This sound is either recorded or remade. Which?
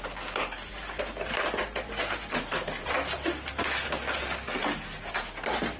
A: recorded